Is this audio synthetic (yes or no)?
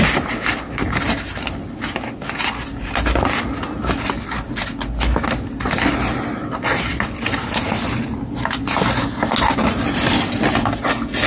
no